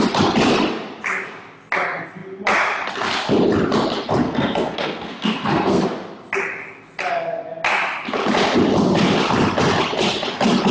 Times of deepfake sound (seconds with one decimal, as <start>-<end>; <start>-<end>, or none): 4.2-5.8